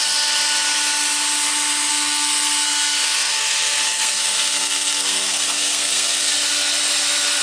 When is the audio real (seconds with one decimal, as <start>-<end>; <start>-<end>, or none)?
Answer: 0.0-1.9; 6.3-7.4